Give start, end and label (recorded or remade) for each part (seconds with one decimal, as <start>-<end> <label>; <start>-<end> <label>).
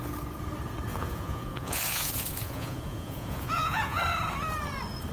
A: 0.0-0.9 recorded; 0.9-4.0 remade; 4.0-5.1 recorded